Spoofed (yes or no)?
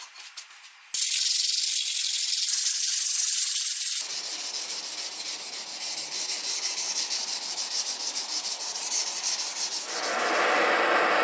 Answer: no